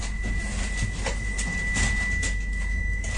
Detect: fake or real real